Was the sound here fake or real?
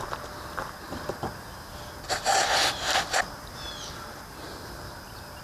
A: real